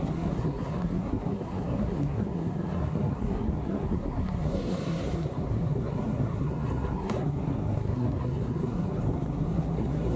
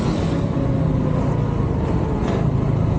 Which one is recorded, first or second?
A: second